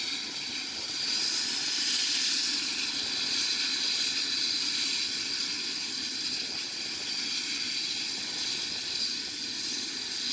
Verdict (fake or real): real